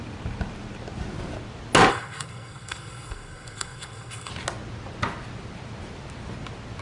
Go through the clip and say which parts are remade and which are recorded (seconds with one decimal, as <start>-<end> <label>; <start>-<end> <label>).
0.0-1.9 recorded; 1.9-4.3 remade; 4.3-6.8 recorded